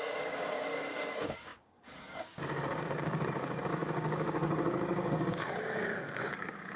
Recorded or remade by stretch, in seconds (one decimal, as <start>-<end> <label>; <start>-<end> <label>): 0.0-6.8 remade